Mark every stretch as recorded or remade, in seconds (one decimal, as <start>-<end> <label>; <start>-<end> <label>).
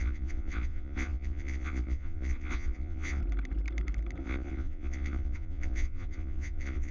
0.0-3.2 remade; 3.2-4.2 recorded; 4.2-6.9 remade